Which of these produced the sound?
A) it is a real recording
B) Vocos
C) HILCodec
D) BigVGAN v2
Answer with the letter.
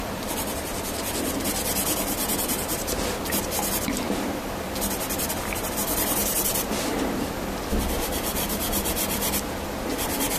D